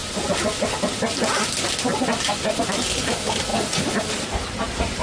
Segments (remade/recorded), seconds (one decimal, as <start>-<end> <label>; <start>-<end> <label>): 0.0-3.0 recorded; 3.0-3.5 remade; 3.5-4.1 recorded; 4.1-5.0 remade